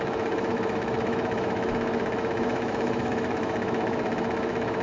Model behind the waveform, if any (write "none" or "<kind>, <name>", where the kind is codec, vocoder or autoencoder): autoencoder, DAC-VAE